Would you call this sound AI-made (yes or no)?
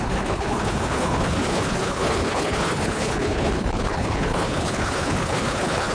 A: yes